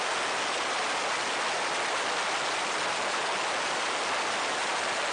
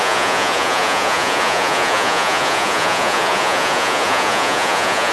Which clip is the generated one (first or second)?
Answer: second